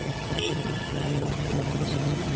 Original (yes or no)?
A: no